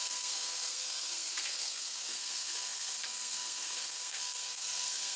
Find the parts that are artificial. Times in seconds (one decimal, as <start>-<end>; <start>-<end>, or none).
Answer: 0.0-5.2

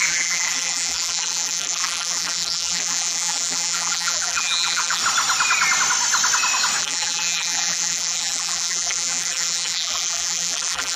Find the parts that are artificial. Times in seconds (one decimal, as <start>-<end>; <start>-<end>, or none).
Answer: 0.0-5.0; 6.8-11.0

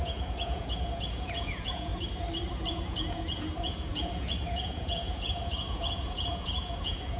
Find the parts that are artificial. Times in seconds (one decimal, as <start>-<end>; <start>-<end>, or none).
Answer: 0.0-1.9; 2.7-7.2